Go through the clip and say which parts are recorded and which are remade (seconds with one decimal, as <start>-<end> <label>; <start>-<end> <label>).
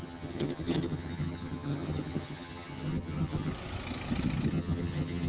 0.0-3.5 remade; 3.5-4.5 recorded; 4.5-5.3 remade